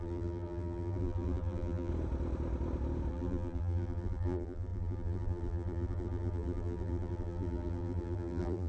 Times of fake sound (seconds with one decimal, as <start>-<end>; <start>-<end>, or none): 0.0-1.9; 3.1-8.7